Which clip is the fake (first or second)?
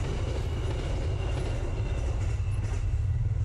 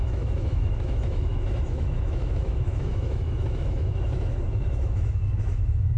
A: second